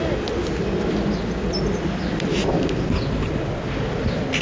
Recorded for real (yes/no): yes